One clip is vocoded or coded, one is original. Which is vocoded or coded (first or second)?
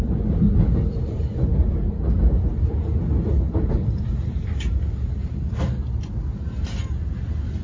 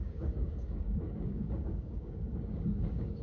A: second